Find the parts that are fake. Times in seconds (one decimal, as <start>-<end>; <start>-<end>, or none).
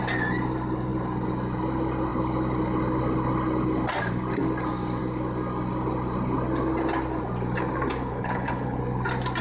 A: 8.0-8.8